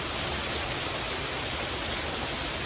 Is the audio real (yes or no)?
yes